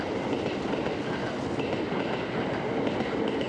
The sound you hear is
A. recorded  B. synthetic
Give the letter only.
A